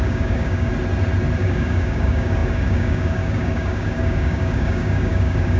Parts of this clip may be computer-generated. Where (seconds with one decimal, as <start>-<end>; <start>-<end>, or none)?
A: 0.0-0.7; 1.4-5.6